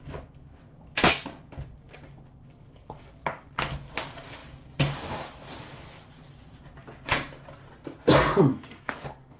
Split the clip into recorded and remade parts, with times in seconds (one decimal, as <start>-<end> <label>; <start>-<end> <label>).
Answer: 0.0-2.5 recorded; 2.5-3.1 remade; 3.1-8.5 recorded; 8.5-9.4 remade